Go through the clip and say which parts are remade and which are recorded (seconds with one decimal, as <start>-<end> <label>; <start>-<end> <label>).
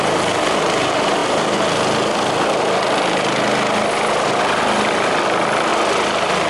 0.0-6.5 recorded